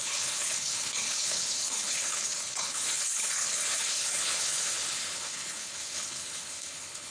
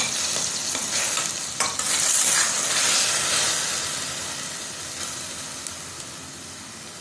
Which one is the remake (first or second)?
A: first